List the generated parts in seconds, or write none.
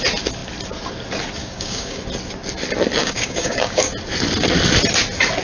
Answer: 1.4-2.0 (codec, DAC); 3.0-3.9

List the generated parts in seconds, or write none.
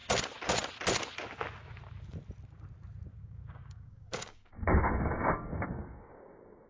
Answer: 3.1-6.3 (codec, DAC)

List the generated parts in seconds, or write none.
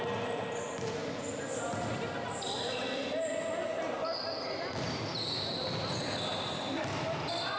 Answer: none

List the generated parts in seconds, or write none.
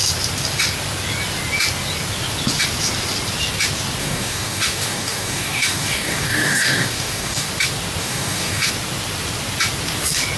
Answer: 4.0-7.5 (codec, DAC); 8.0-8.7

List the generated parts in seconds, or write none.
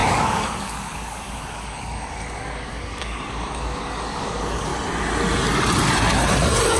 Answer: 0.0-4.7 (codec, DAC)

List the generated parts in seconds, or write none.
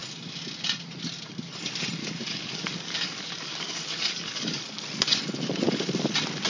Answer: 2.0-4.6 (codec, DAC)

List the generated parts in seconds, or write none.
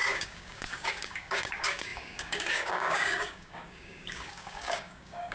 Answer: 0.0-5.3 (codec, DAC)